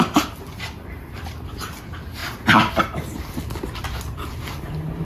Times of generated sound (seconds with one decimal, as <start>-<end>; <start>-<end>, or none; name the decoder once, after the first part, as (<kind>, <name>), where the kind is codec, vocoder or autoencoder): none